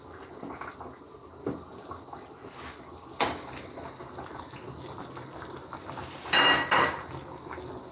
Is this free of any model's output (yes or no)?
yes